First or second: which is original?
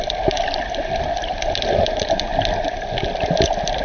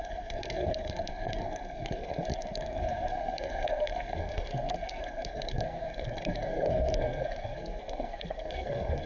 first